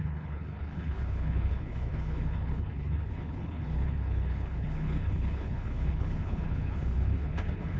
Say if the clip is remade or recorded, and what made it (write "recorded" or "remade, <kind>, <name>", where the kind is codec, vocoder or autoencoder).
remade, codec, HILCodec